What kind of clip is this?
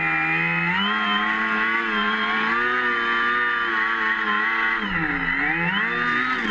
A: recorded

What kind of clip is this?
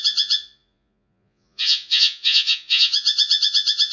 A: remade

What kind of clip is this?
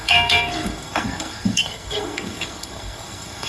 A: remade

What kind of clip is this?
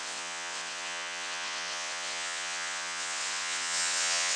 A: remade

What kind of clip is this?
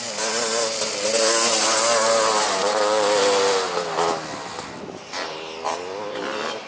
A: recorded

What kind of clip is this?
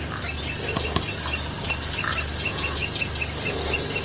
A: recorded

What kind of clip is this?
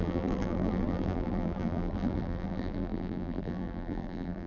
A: remade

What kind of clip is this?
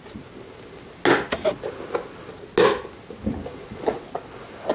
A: recorded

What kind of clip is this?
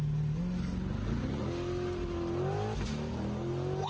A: recorded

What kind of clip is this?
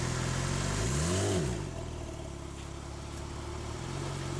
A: recorded